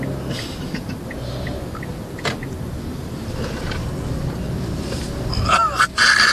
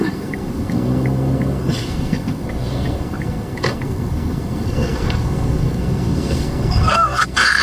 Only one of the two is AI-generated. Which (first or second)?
second